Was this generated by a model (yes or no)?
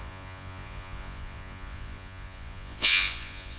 yes